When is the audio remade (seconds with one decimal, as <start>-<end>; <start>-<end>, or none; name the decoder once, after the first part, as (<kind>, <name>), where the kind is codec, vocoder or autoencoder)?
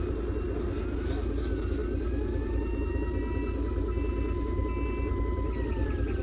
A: none